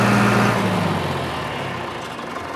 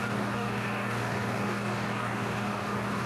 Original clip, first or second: first